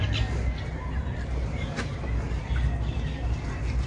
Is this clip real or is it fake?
real